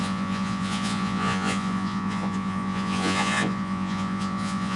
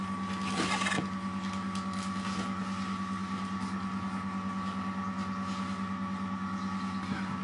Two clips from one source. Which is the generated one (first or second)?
first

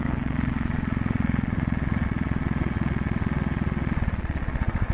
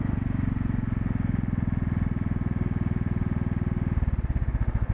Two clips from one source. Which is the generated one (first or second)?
first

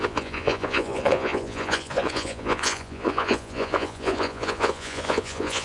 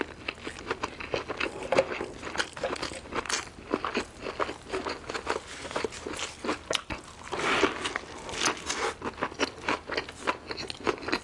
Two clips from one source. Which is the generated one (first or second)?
first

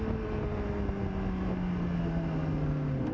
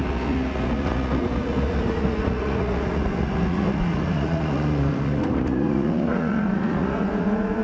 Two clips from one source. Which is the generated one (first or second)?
second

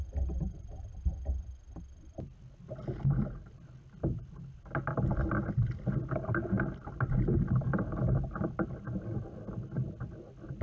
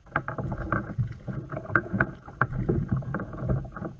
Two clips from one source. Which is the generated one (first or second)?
second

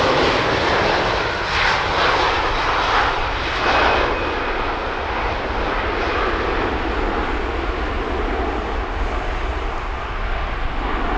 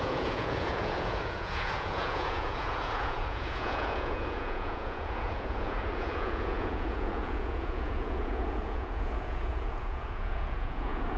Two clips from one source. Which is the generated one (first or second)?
second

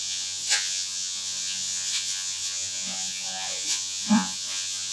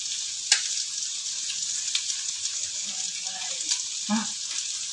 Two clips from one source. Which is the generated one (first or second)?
first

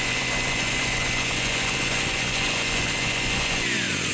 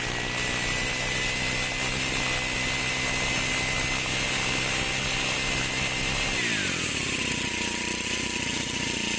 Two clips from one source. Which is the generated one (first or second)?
first